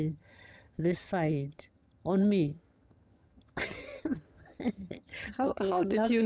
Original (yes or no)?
no